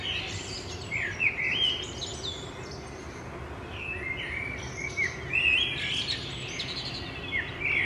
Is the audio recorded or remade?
recorded